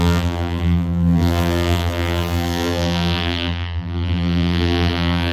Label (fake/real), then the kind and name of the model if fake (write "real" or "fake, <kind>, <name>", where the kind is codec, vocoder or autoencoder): fake, vocoder, BigVGAN v2